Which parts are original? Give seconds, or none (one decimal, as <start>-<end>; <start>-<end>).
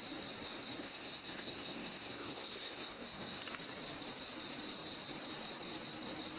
0.0-0.8; 3.4-6.4